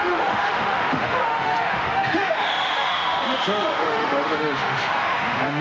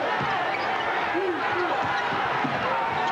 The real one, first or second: second